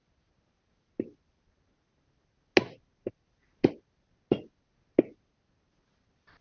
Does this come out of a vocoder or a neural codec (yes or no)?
no